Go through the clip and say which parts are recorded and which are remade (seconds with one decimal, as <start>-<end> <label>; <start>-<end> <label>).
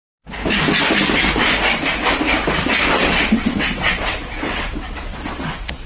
0.0-2.9 recorded; 2.9-5.9 remade